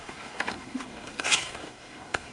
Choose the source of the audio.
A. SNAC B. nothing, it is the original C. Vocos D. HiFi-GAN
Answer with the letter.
A